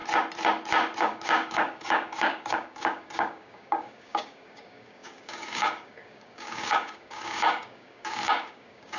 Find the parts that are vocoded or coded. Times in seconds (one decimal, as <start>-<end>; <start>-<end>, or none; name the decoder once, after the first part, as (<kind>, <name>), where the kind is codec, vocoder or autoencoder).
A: 1.0-9.0 (codec, DAC)